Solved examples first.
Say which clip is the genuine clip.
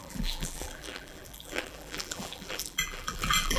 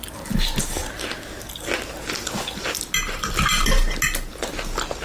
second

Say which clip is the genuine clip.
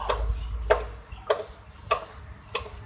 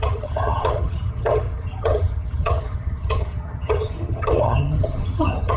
first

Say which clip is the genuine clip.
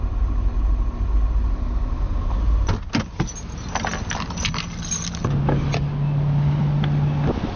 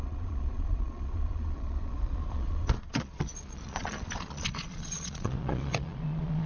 first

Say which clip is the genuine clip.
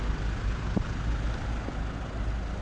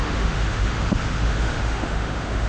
first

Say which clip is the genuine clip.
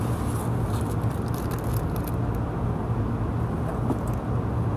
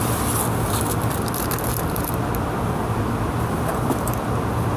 first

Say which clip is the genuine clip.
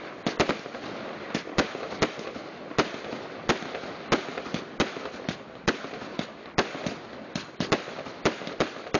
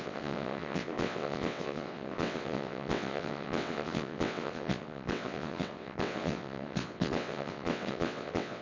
first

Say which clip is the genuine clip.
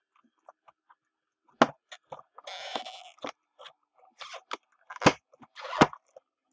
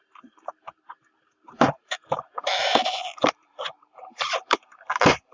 first